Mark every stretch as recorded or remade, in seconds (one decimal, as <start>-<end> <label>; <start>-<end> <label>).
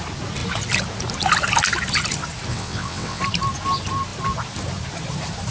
0.0-2.5 recorded; 2.5-3.2 remade; 3.2-5.5 recorded